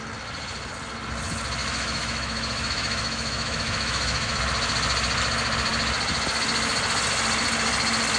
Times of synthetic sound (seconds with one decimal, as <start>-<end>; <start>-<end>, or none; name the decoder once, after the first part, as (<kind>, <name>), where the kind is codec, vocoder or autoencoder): 1.6-4.4 (autoencoder, DAC-VAE)